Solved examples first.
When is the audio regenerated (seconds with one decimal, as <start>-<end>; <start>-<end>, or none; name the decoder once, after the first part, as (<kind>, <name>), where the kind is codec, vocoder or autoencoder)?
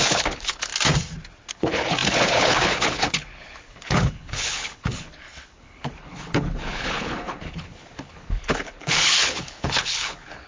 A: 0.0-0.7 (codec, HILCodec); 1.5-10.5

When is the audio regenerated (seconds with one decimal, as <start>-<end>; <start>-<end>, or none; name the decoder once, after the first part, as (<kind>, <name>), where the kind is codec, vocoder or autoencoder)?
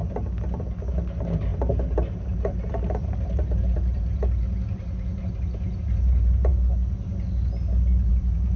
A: 0.9-6.5 (vocoder, BigVGAN v2); 8.1-8.6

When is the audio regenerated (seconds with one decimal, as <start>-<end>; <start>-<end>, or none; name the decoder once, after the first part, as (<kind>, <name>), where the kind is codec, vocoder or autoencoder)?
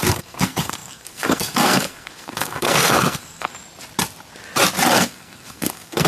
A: 0.0-3.5 (codec, SNAC); 4.9-6.1